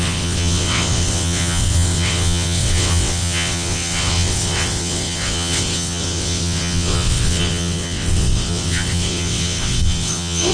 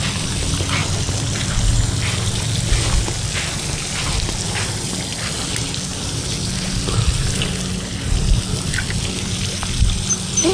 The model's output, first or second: first